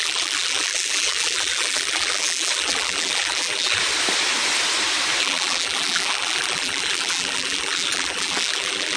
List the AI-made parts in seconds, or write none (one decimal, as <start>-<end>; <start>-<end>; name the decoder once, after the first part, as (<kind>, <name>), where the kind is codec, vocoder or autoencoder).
0.0-3.8 (vocoder, BigVGAN v2); 5.2-9.0